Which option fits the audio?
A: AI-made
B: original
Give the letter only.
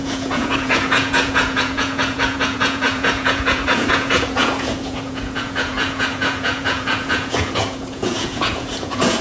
A